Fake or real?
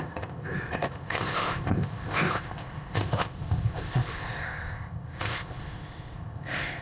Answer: fake